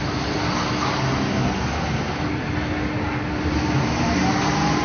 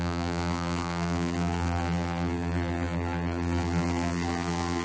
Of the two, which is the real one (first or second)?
first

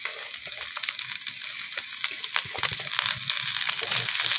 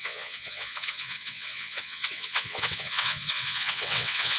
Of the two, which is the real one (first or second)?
first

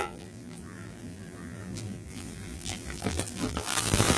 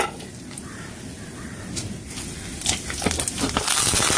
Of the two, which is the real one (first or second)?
second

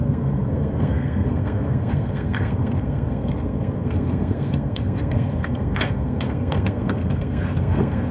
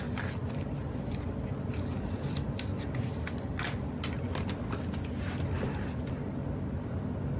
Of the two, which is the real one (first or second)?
second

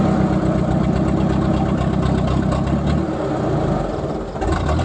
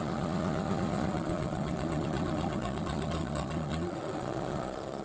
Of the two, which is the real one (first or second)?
first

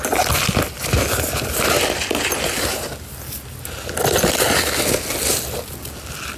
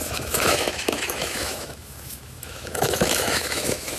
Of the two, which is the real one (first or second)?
first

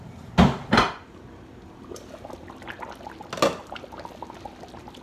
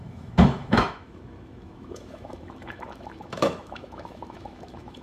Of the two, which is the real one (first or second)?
first